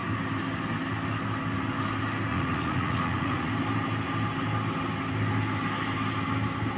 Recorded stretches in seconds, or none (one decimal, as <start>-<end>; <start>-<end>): 0.0-2.3; 3.5-6.8